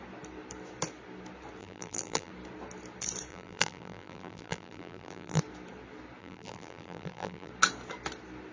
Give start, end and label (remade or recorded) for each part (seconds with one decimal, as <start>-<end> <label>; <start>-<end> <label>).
0.0-1.6 recorded; 1.6-2.3 remade; 2.3-3.3 recorded; 3.3-5.4 remade; 5.4-6.2 recorded; 6.2-7.5 remade; 7.5-8.5 recorded